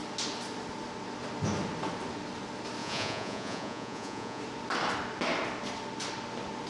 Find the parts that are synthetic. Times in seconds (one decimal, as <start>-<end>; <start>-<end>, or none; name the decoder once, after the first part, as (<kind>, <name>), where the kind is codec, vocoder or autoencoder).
2.8-4.4 (vocoder, Vocos)